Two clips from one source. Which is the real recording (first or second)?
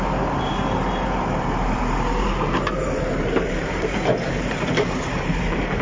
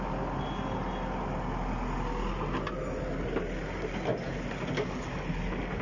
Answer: second